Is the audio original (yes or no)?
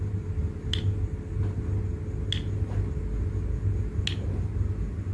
yes